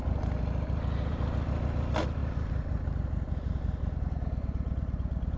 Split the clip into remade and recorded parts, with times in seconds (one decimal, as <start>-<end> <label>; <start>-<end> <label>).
0.0-5.4 recorded